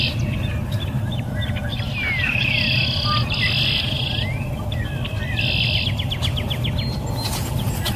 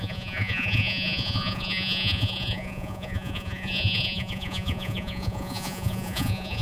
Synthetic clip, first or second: second